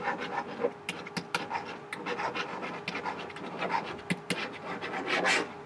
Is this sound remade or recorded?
recorded